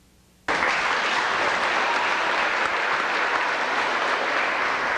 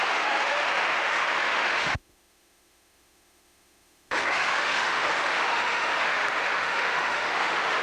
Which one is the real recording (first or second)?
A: first